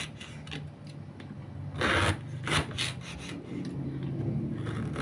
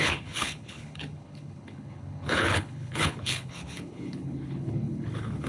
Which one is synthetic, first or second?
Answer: second